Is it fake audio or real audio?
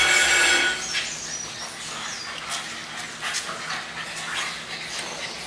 real